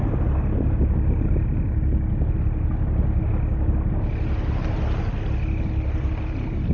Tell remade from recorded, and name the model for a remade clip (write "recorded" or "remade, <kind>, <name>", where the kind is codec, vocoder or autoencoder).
recorded